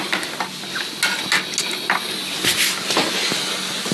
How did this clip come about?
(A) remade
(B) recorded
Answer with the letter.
B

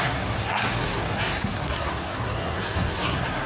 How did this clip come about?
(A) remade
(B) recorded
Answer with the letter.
A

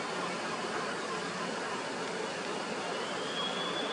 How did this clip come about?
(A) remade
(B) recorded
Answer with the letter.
B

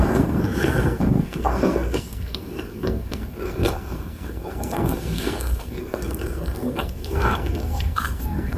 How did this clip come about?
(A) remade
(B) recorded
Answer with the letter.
A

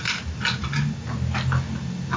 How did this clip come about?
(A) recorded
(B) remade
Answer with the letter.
A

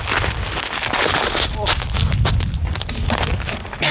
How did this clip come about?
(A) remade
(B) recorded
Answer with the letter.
B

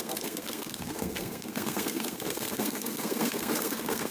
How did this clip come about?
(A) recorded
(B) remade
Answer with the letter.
B